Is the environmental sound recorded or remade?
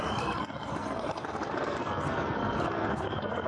remade